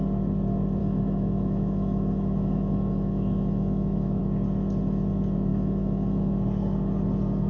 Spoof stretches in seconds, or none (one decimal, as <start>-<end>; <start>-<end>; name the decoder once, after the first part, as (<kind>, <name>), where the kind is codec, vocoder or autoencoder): 0.8-4.2 (autoencoder, DAC-VAE); 5.5-6.3